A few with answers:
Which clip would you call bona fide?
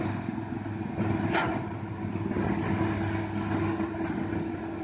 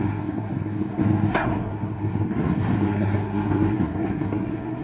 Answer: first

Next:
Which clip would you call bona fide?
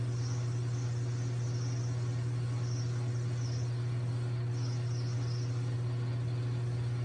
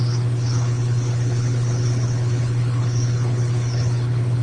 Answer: first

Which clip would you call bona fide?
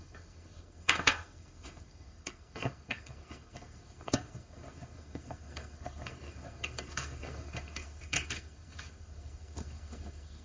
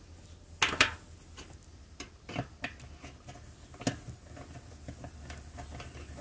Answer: second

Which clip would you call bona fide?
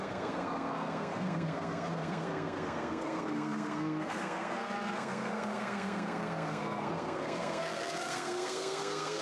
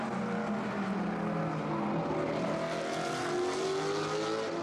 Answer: second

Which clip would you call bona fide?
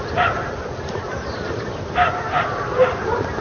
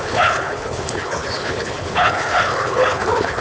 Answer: first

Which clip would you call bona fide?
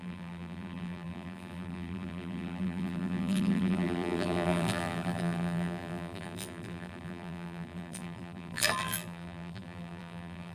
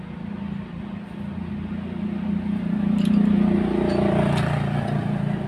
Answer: second